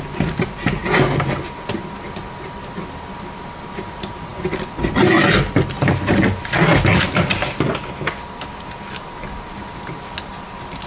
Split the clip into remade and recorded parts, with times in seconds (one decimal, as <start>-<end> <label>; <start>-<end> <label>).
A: 0.0-10.9 recorded